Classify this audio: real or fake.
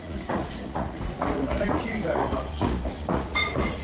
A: fake